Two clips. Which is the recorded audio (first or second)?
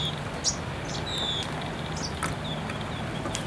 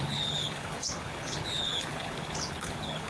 first